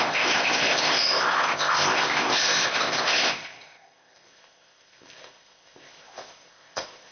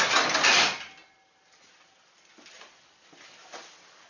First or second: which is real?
second